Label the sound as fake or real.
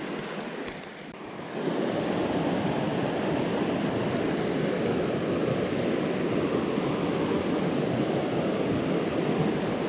real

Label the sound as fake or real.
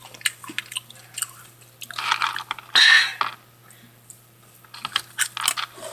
real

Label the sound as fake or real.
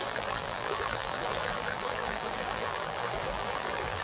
fake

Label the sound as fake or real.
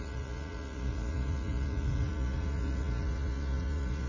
fake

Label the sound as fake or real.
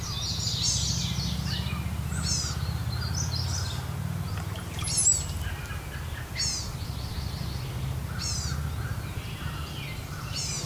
real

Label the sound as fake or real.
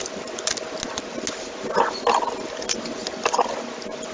real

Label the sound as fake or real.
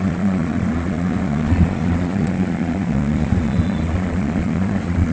fake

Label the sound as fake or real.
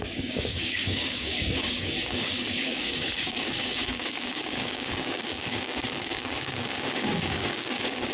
fake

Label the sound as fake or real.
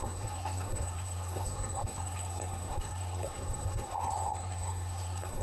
fake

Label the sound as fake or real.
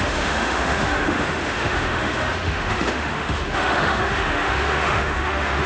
fake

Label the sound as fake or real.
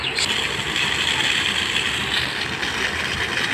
fake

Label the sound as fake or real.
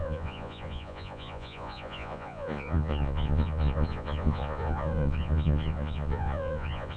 fake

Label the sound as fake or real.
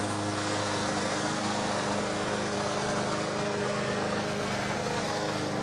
fake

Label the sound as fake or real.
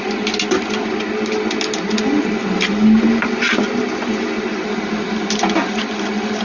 real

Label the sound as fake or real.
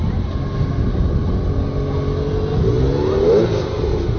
real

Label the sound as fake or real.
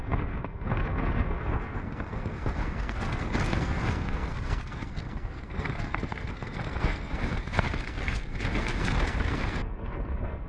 fake